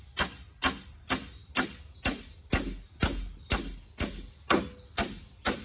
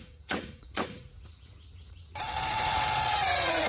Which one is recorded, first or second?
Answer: first